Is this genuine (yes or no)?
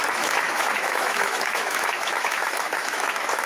no